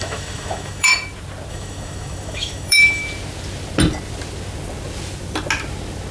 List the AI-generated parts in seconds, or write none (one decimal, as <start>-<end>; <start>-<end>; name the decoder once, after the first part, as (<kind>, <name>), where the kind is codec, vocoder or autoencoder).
0.0-0.9 (autoencoder, DAC-VAE); 1.5-3.0